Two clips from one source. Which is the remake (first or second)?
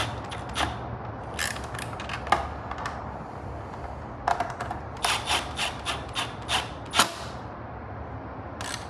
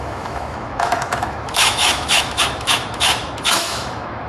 second